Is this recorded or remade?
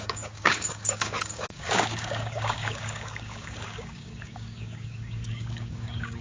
remade